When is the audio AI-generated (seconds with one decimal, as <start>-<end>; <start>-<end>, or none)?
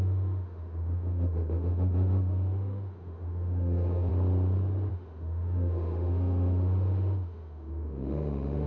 0.0-4.1; 4.9-8.7